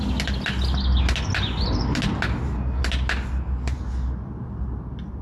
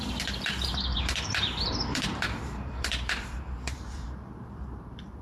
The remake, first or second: second